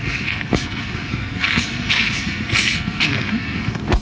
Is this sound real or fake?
fake